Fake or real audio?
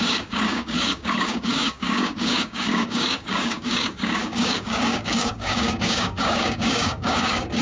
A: fake